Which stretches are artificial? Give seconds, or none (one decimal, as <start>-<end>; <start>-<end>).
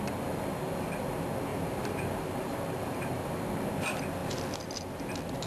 1.5-3.7